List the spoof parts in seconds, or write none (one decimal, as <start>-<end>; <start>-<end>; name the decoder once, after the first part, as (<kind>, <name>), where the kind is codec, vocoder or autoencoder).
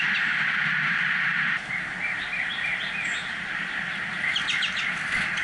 none